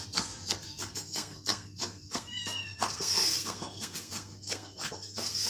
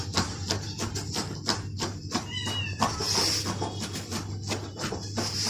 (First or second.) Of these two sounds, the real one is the second